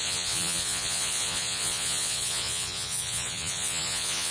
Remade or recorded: remade